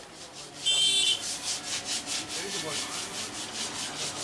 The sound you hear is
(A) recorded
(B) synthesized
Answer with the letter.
A